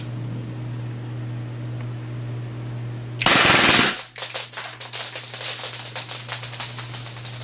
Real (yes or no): yes